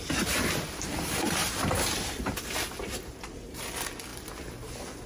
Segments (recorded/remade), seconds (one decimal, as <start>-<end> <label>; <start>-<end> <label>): 0.0-1.4 remade; 1.4-3.1 recorded; 3.1-5.1 remade